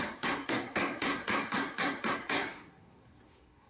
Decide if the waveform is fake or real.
fake